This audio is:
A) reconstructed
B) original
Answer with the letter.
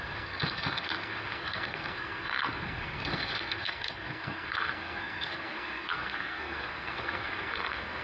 A